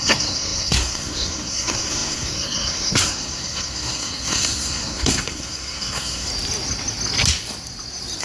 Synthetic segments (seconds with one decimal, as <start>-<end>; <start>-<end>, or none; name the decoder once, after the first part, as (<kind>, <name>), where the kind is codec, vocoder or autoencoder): 0.0-6.3 (codec, SNAC)